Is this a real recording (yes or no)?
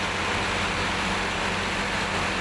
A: yes